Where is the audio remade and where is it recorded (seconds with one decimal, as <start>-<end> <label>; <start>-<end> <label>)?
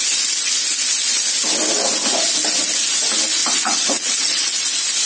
0.0-3.4 recorded; 3.4-4.6 remade; 4.6-5.1 recorded